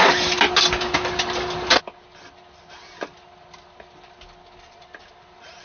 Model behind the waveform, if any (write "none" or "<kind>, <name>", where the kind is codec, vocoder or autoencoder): none